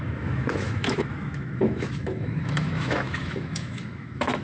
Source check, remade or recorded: remade